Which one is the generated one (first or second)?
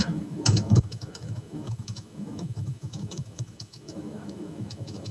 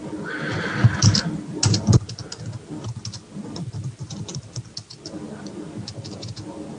first